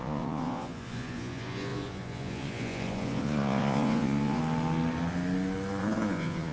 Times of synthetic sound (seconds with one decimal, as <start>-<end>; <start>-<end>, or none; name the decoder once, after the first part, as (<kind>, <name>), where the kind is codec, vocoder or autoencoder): 0.0-4.4 (vocoder, Vocos); 5.8-6.5